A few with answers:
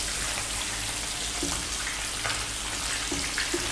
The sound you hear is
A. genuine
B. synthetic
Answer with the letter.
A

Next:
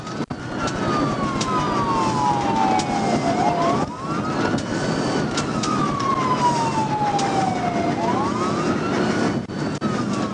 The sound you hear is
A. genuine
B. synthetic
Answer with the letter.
A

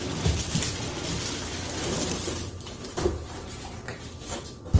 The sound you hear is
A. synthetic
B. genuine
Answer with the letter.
B